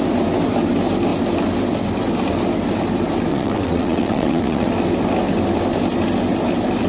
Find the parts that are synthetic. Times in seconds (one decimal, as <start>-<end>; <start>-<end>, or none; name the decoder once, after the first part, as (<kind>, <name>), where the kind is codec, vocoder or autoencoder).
3.3-4.7 (vocoder, WaveNeXt)